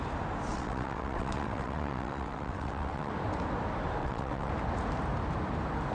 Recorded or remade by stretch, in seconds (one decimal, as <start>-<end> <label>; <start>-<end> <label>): 0.0-0.5 recorded; 0.5-3.1 remade; 3.1-4.0 recorded; 4.0-4.5 remade; 4.5-5.9 recorded